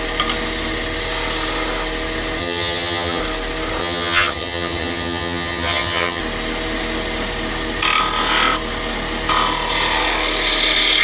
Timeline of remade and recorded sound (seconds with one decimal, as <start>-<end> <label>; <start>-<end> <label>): 0.0-2.4 recorded; 2.4-3.2 remade; 3.2-3.8 recorded; 3.8-6.2 remade; 6.2-11.0 recorded